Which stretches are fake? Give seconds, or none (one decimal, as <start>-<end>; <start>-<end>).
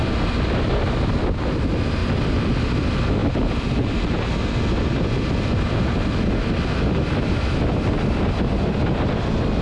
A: none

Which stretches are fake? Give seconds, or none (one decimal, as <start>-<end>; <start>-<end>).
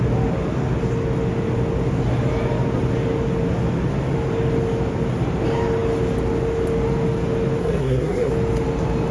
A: 7.6-8.3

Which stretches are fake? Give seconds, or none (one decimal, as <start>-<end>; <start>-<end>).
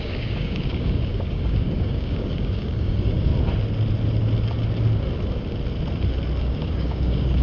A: 0.0-3.3; 6.4-7.4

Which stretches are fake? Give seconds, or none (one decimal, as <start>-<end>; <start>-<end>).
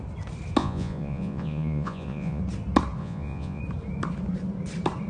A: 0.6-2.4; 3.0-3.6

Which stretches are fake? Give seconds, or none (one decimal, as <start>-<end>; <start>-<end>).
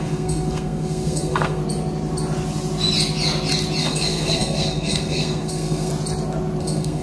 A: 0.0-1.6; 3.8-5.9; 6.6-7.0